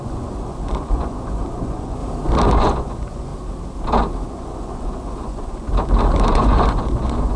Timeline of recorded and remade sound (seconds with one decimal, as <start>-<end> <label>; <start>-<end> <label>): 0.0-2.0 remade; 2.0-2.6 recorded; 2.6-3.3 remade; 3.3-4.3 recorded; 4.3-5.7 remade; 5.7-6.3 recorded; 6.3-7.4 remade